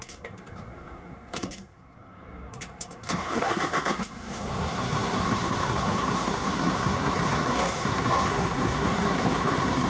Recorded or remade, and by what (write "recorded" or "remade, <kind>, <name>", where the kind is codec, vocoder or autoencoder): remade, codec, SNAC